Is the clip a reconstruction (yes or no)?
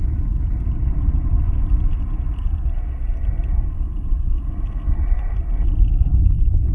no